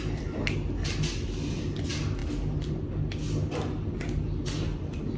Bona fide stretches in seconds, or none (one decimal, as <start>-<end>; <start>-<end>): 0.0-5.2